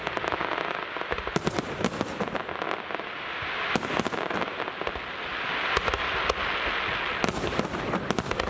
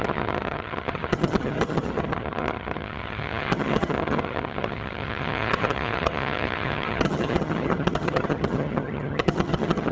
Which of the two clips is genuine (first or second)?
first